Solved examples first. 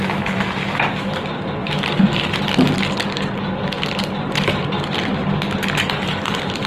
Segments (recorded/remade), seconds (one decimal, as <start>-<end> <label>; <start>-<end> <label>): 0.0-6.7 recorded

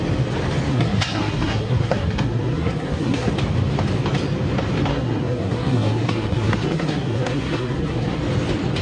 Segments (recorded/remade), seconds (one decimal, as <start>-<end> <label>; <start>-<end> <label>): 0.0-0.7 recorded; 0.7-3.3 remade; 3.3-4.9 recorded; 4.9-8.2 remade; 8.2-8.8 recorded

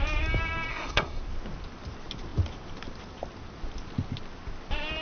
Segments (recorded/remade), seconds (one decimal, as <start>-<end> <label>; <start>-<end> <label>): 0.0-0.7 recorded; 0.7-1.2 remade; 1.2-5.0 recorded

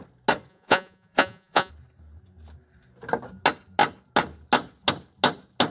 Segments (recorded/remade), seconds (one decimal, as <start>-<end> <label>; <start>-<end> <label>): 0.0-0.5 recorded; 0.5-1.7 remade; 1.7-5.7 recorded

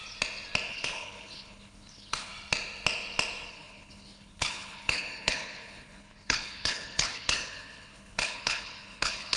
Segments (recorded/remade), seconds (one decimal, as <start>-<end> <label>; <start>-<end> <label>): 0.0-0.7 recorded; 0.7-2.3 remade; 2.3-3.5 recorded; 3.5-9.4 remade